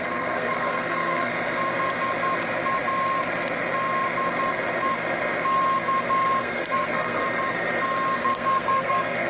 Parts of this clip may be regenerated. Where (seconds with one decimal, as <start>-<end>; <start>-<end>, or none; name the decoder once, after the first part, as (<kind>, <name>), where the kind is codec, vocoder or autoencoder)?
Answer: 0.0-1.3 (codec, SNAC); 6.4-7.2; 8.2-9.3